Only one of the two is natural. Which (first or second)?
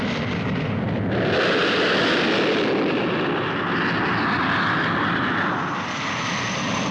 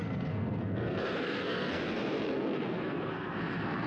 first